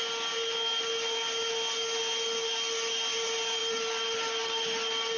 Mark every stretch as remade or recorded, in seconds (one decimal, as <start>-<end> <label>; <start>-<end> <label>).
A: 0.0-5.2 recorded